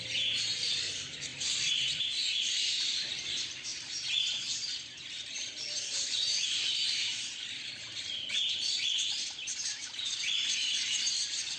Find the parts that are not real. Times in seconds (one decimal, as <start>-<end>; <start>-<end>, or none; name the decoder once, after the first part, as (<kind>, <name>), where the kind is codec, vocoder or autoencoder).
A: 0.0-11.6 (vocoder, BigVGAN v2)

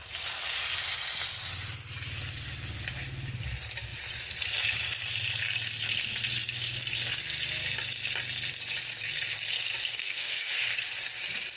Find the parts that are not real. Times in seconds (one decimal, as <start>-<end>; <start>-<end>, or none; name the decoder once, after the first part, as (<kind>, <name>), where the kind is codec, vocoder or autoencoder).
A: 9.9-10.5 (codec, SNAC)